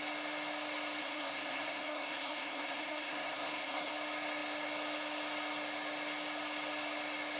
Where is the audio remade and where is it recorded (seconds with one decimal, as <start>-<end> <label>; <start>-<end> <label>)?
0.0-1.0 recorded; 1.0-3.9 remade; 3.9-7.4 recorded